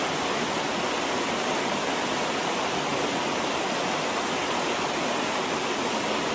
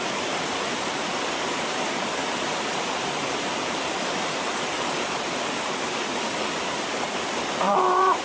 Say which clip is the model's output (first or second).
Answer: second